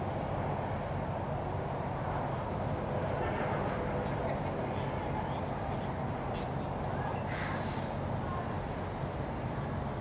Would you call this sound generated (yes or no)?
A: no